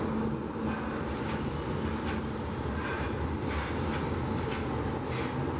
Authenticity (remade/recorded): recorded